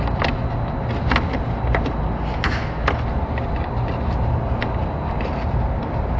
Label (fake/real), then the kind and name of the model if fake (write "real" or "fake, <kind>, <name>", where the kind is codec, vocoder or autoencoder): real